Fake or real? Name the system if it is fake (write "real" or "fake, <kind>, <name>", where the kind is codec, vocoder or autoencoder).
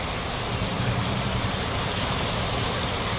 real